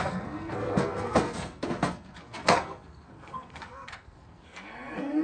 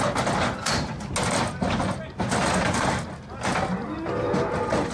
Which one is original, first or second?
second